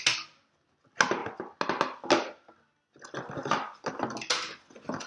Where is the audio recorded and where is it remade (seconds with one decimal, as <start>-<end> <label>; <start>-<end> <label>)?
0.0-5.1 recorded